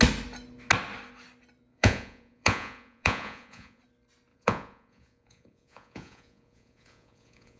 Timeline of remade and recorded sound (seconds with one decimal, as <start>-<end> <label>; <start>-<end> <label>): 0.0-1.7 recorded; 1.7-3.8 remade; 3.8-4.3 recorded; 4.3-7.6 remade